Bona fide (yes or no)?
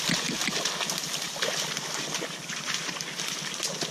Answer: yes